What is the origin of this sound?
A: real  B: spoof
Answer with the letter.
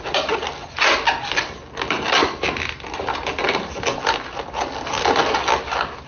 A